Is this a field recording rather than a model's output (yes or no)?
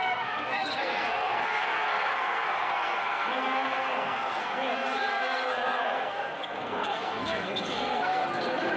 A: no